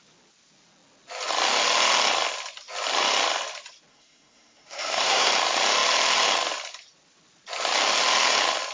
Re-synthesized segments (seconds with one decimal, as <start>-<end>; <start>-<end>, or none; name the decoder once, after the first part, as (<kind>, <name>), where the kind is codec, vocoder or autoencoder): 3.9-5.3 (codec, SNAC)